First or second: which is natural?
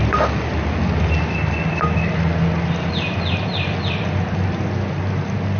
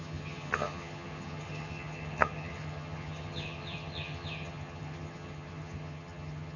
first